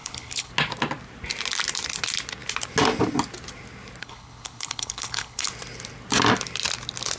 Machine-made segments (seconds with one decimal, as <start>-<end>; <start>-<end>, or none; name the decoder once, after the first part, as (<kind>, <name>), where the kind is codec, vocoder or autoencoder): 0.0-0.5 (codec, HILCodec); 4.0-5.5

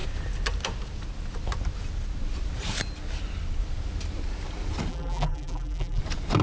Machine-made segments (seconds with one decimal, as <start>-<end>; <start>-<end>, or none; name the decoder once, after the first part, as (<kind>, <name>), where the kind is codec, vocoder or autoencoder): 4.9-6.0 (vocoder, BigVGAN v2)